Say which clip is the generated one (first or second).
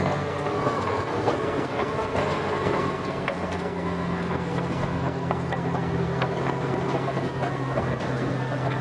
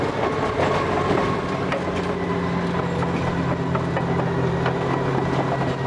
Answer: first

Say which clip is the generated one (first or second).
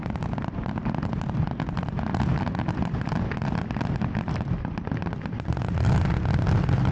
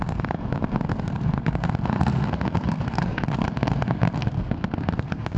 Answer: second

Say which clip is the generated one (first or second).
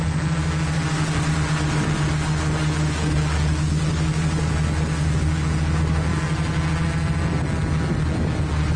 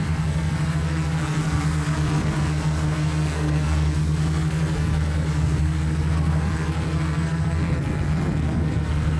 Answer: second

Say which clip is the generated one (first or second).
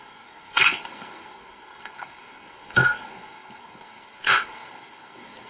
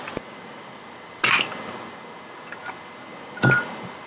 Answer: first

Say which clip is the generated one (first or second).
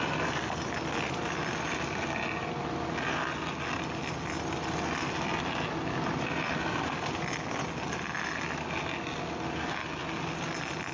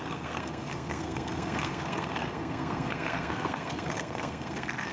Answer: second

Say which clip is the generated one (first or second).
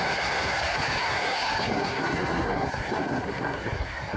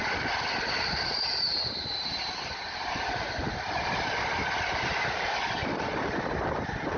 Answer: first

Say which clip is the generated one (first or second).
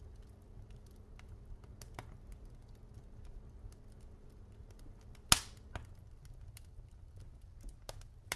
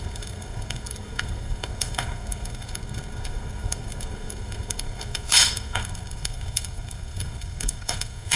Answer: second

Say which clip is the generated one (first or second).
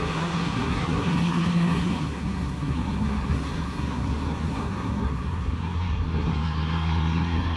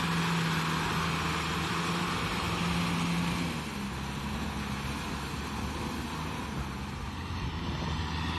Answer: first